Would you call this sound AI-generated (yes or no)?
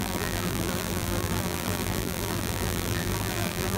yes